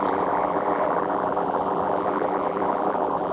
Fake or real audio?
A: fake